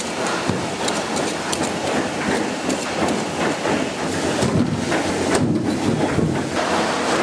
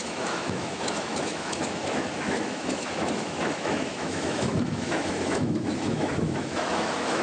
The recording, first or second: first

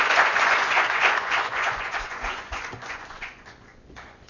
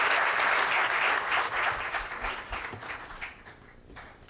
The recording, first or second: second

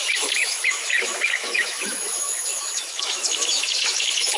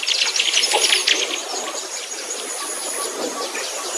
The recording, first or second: second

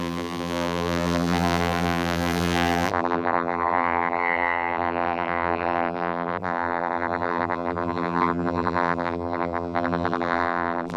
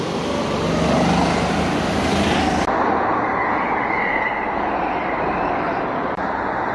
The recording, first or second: second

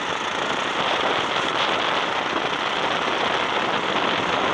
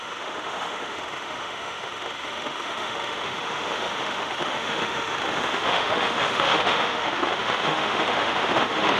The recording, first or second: first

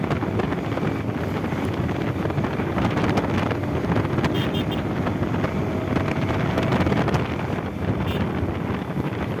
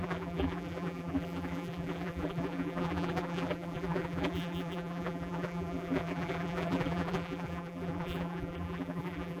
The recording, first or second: first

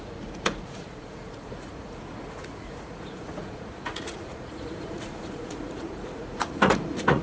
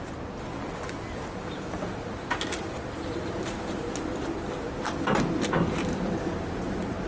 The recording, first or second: second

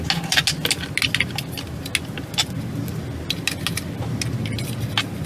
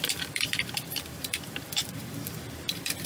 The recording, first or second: first